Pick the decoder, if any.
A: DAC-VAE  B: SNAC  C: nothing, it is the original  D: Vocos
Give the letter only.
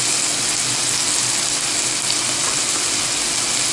C